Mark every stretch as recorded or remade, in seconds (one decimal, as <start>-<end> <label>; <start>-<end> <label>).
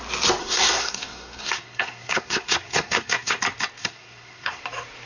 0.0-0.4 recorded; 0.4-3.4 remade; 3.4-3.8 recorded; 3.8-4.6 remade; 4.6-5.0 recorded